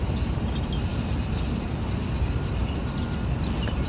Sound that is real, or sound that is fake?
fake